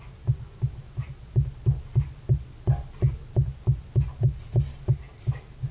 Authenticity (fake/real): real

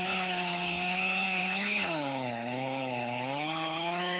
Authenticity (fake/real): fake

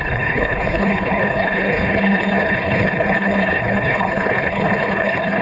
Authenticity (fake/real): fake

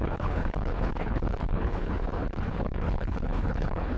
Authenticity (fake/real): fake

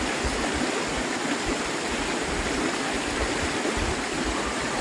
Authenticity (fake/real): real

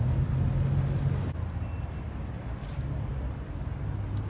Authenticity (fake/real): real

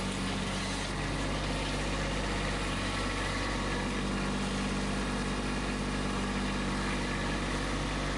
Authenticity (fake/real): real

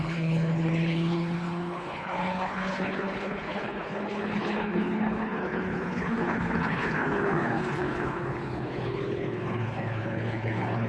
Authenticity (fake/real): fake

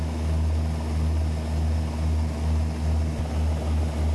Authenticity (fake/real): real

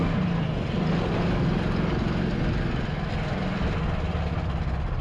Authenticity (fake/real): real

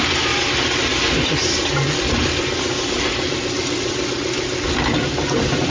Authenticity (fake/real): real